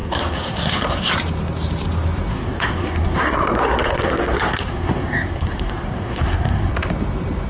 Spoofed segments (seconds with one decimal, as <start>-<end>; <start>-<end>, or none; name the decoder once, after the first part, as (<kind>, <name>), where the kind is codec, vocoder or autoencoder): 0.0-1.1 (codec, SNAC); 2.3-6.7